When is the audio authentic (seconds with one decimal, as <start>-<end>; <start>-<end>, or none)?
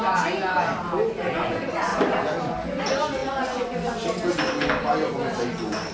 0.0-5.9